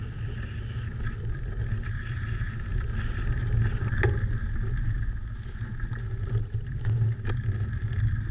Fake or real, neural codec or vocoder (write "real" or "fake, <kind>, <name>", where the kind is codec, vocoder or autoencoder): real